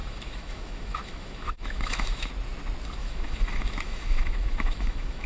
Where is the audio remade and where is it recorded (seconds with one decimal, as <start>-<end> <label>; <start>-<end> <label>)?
0.0-2.3 remade; 2.3-3.0 recorded; 3.0-5.3 remade